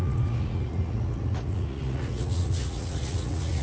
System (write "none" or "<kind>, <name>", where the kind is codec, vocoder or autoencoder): vocoder, Vocos